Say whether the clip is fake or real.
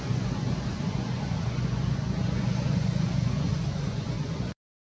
fake